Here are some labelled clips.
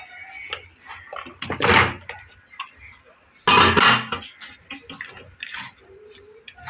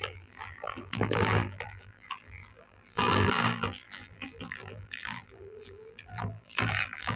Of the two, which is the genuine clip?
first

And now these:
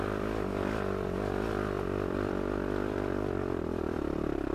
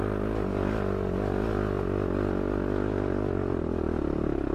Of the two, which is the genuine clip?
second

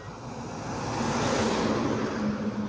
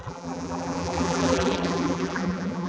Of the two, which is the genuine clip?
first